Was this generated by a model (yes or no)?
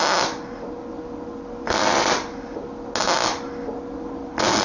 no